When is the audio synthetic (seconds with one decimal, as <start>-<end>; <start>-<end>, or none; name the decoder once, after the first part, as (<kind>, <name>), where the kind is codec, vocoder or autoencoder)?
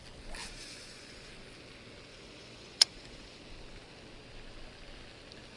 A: 0.4-1.3 (vocoder, Vocos); 2.1-3.4